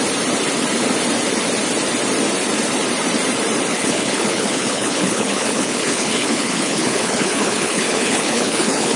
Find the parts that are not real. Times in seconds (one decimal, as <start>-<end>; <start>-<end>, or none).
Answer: 3.7-9.0